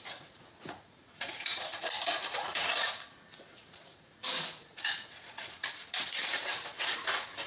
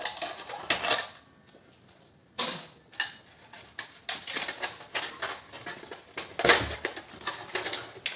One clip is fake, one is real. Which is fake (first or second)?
first